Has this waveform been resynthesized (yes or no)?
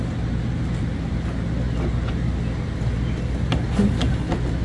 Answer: no